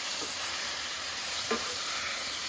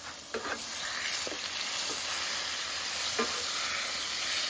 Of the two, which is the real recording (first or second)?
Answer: second